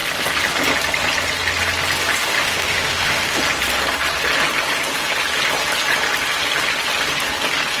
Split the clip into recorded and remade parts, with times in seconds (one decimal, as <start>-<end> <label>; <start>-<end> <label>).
0.0-2.2 recorded; 2.2-3.4 remade; 3.4-7.8 recorded